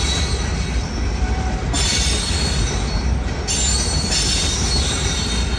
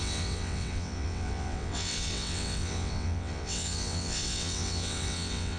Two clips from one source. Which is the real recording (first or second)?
first